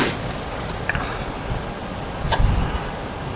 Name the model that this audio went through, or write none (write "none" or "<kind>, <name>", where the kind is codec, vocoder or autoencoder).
none